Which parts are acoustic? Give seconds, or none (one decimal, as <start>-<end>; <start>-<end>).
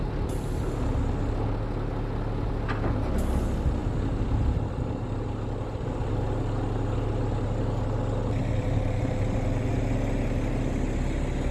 0.0-8.4; 9.7-11.5